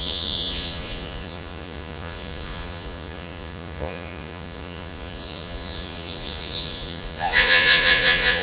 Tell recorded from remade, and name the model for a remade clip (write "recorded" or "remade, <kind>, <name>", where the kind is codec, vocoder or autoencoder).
remade, vocoder, Vocos